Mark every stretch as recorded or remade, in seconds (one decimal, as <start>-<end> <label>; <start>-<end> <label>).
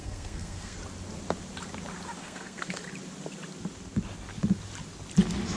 0.0-0.8 remade; 0.8-2.2 recorded; 2.2-2.8 remade; 2.8-5.6 recorded